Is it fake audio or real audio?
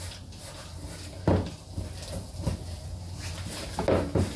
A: real